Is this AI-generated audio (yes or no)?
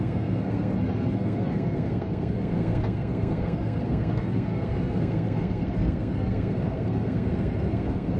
yes